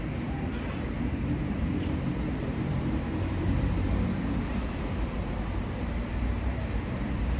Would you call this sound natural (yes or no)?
no